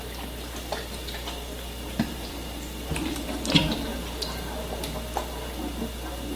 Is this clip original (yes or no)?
no